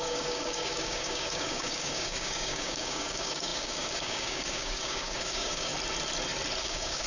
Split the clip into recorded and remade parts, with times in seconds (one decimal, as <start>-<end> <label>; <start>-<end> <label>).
0.0-5.7 remade; 5.7-6.6 recorded; 6.6-7.1 remade